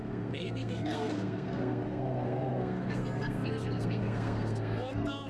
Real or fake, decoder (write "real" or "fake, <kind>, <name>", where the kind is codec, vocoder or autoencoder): fake, codec, SNAC